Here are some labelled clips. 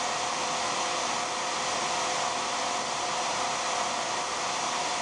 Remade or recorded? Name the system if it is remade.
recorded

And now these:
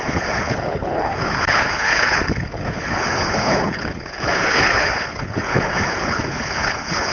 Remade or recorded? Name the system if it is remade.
remade, codec, HILCodec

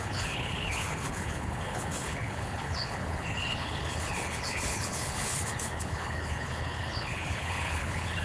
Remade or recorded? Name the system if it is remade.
remade, codec, HILCodec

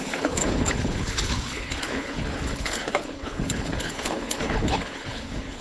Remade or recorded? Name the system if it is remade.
remade, codec, HILCodec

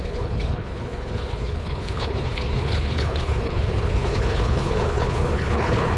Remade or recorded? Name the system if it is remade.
remade, codec, HILCodec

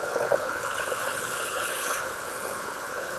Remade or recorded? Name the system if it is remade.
remade, codec, HILCodec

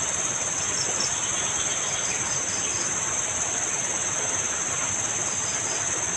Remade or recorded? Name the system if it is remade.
recorded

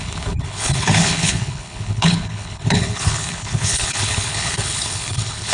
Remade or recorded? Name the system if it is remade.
remade, codec, HILCodec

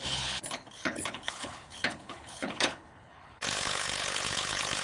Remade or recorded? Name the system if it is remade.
remade, codec, HILCodec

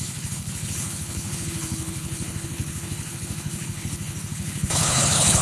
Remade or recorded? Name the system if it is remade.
remade, codec, HILCodec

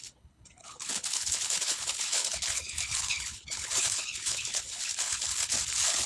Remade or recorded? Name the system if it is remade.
remade, codec, HILCodec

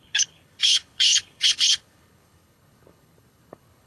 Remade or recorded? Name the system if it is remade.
remade, codec, HILCodec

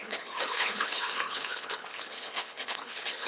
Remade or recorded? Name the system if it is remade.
remade, codec, HILCodec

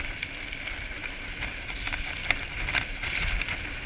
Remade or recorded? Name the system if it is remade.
recorded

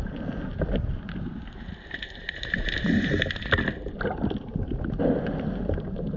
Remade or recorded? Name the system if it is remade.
recorded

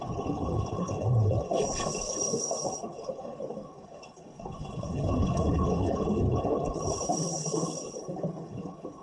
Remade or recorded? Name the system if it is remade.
remade, codec, HILCodec